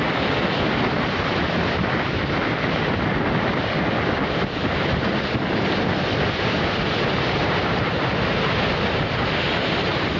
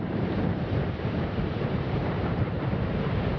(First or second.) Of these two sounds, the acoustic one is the first